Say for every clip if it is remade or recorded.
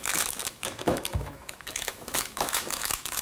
remade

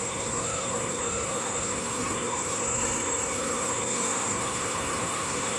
remade